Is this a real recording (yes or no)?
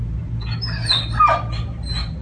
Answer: yes